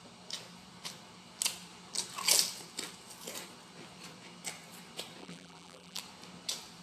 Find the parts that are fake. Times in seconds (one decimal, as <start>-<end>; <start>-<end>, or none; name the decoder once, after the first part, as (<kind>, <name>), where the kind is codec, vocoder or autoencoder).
5.2-6.0 (vocoder, BigVGAN v2)